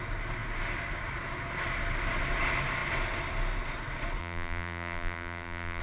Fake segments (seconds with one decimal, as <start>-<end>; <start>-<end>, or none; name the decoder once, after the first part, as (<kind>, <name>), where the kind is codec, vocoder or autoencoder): 4.2-5.8 (vocoder, BigVGAN v2)